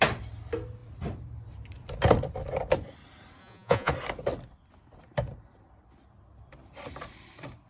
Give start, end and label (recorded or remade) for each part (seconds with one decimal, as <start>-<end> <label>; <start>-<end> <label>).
0.0-3.4 recorded; 3.4-3.9 remade; 3.9-7.7 recorded